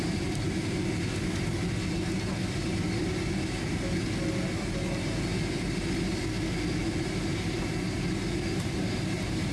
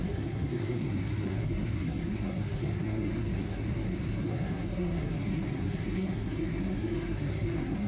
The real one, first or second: first